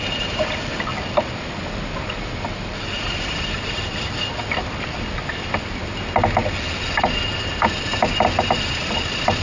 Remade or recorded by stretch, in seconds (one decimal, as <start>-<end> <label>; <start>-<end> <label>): 0.0-5.8 remade; 5.8-6.4 recorded; 6.4-9.4 remade